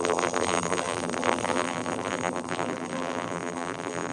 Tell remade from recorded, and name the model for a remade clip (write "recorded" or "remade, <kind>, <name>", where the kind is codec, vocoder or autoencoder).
remade, vocoder, BigVGAN v2